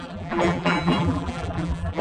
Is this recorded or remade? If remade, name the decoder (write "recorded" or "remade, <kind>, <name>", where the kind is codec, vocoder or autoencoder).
remade, vocoder, BigVGAN v2